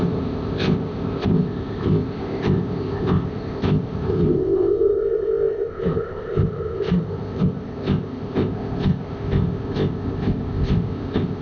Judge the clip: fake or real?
fake